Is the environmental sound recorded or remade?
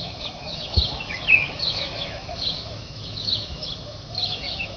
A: remade